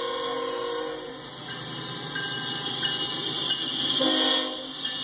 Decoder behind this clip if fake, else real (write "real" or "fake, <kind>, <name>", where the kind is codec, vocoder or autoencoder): real